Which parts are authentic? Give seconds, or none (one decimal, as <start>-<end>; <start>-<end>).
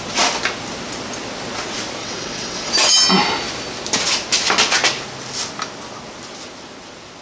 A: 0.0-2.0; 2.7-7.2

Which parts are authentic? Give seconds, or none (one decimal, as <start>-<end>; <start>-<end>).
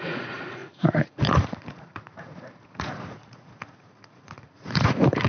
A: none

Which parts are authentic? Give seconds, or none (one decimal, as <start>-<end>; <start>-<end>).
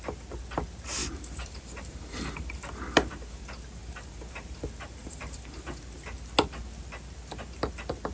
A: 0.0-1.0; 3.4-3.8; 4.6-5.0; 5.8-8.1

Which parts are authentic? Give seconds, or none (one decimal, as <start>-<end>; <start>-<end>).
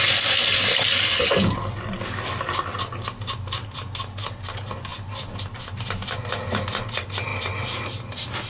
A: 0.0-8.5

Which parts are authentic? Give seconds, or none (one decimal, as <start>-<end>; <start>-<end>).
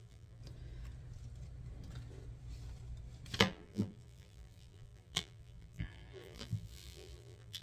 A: 0.4-3.4